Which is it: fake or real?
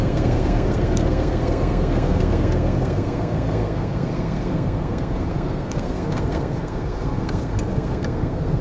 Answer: fake